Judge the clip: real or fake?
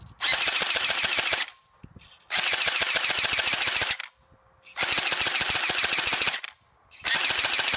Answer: real